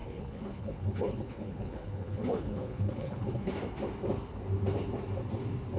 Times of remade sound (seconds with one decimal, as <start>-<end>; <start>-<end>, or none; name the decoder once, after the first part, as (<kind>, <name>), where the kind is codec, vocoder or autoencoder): 0.0-3.5 (codec, HILCodec)